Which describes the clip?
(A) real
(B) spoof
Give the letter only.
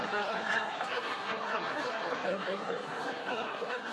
B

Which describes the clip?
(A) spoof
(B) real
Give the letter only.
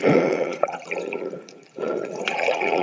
A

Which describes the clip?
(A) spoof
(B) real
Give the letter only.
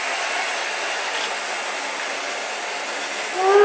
B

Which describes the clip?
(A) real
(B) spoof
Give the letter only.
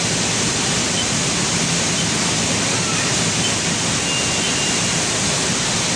A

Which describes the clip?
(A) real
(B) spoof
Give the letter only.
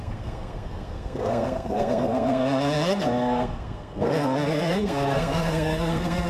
B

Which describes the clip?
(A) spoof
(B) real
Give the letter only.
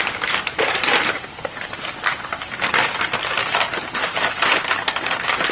A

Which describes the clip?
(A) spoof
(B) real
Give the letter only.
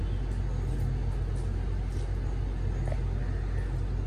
B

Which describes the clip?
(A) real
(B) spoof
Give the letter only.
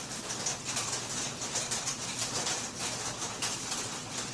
A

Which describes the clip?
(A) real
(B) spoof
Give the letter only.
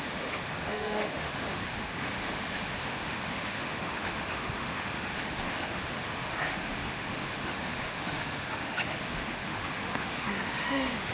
B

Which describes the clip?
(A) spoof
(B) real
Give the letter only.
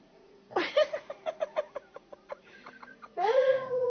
A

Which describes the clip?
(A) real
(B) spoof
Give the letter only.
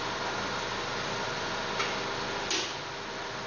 A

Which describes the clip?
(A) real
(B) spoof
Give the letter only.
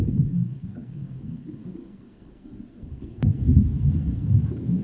B